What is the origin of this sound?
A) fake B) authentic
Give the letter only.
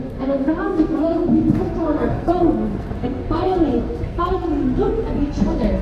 A